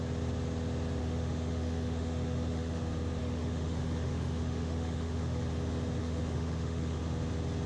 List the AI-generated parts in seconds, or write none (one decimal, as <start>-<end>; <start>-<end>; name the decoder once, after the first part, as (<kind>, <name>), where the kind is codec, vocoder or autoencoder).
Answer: 1.0-2.8 (autoencoder, DAC-VAE); 3.2-5.4; 6.0-7.0